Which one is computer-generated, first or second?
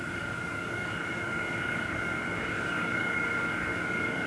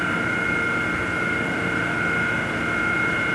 first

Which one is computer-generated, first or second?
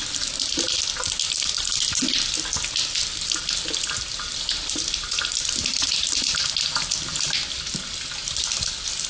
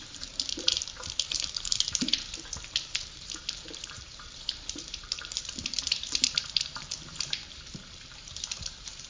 second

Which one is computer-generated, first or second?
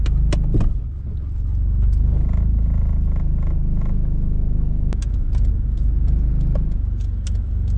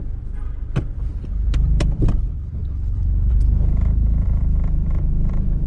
second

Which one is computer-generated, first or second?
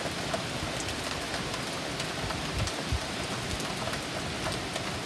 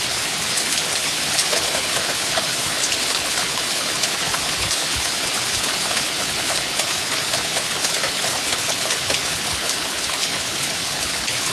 second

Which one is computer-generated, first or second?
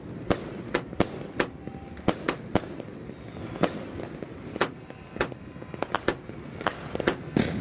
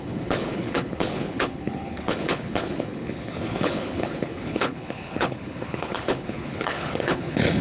second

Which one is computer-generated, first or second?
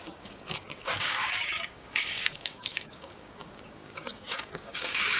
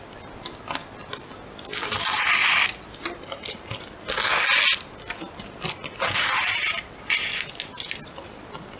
first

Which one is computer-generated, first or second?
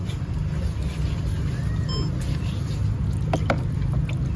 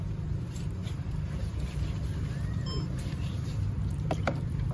second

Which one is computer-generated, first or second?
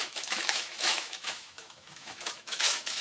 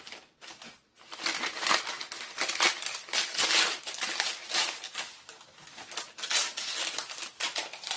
first